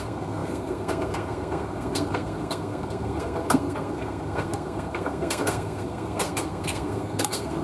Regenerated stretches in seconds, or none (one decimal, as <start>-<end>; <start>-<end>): 0.0-7.6